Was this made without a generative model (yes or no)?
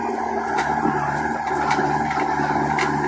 yes